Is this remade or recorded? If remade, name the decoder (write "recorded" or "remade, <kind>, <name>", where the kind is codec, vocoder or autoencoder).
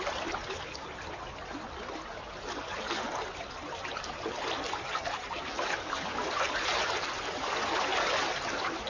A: remade, vocoder, BigVGAN v2